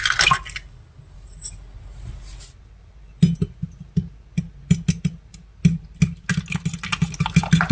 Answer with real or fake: real